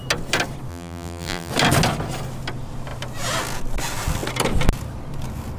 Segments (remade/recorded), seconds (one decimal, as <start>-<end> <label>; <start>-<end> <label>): 0.0-0.7 recorded; 0.7-1.5 remade; 1.5-5.6 recorded

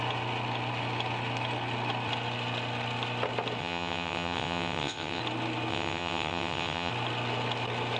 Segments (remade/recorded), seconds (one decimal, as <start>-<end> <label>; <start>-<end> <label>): 0.0-3.6 recorded; 3.6-5.2 remade; 5.2-5.7 recorded; 5.7-6.9 remade; 6.9-8.0 recorded

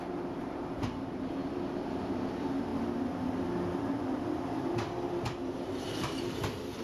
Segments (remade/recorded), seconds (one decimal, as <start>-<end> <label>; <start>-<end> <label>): 0.0-2.7 remade; 2.7-6.0 recorded; 6.0-6.8 remade

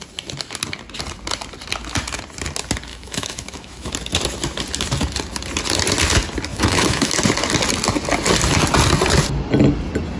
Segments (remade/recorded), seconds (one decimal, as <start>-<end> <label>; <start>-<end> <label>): 0.0-2.9 recorded; 2.9-3.9 remade; 3.9-6.5 recorded; 6.5-7.1 remade; 7.1-10.2 recorded

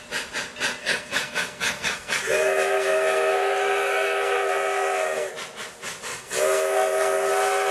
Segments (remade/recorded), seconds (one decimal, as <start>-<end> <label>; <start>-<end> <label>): 0.0-0.8 recorded; 0.8-5.3 remade; 5.3-6.1 recorded; 6.1-7.3 remade; 7.3-7.7 recorded